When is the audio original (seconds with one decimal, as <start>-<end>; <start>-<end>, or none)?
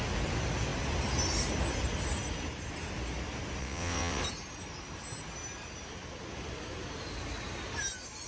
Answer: 0.0-3.6; 4.2-8.3